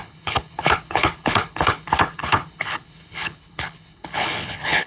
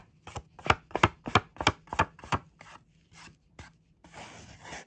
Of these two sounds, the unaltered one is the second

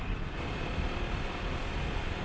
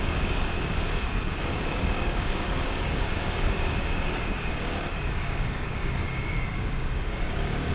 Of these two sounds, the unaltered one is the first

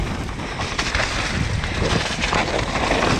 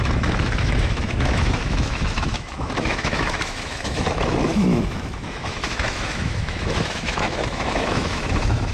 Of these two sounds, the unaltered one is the first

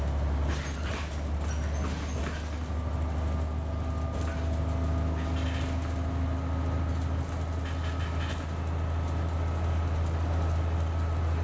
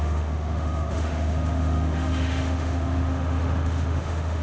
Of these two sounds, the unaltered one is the first